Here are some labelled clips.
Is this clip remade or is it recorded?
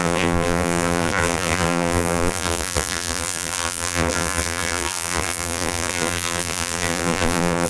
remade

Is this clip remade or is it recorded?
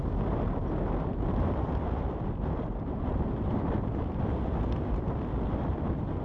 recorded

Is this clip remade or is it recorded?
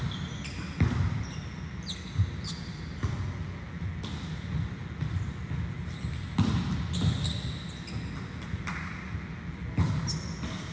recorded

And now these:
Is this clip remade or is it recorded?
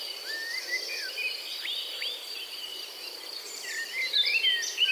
recorded